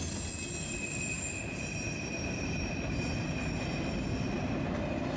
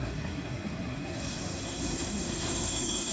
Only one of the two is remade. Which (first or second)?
second